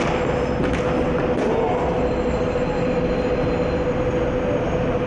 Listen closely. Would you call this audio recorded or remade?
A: recorded